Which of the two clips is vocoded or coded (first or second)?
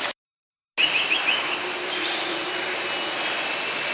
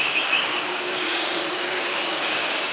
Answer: second